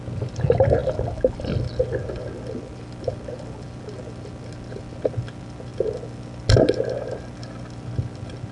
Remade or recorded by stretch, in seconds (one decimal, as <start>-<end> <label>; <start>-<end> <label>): 0.0-8.5 recorded